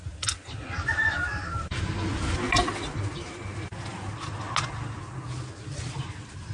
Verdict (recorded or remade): recorded